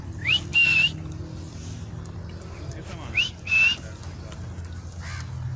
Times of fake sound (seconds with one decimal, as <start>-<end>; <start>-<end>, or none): none

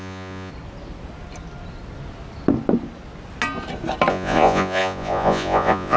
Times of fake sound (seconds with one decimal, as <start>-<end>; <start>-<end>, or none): 0.0-0.5; 4.1-6.0

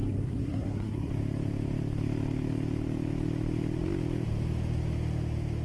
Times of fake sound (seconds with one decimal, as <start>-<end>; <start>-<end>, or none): 0.0-1.1

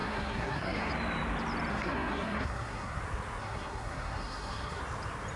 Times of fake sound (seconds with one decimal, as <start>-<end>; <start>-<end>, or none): 0.0-0.9; 1.7-3.0; 3.4-4.8

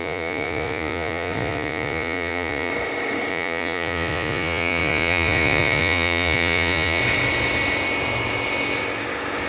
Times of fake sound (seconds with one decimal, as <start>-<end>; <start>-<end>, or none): 0.0-2.7; 3.3-7.0